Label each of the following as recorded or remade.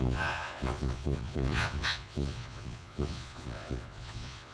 remade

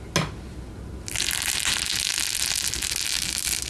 recorded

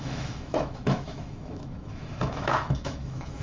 remade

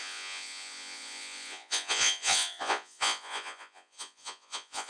remade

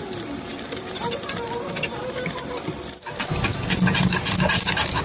recorded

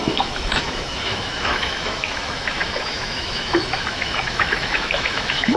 remade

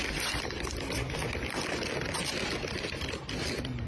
remade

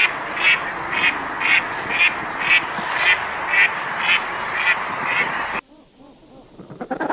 recorded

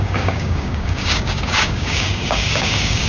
remade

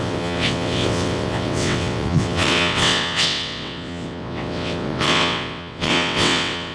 remade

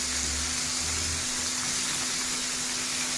recorded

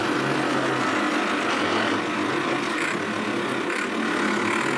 recorded